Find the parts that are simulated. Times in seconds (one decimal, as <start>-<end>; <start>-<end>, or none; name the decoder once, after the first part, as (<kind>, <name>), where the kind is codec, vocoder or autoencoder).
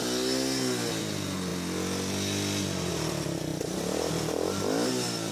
3.5-4.1 (vocoder, BigVGAN v2)